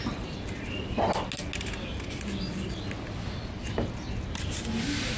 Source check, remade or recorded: recorded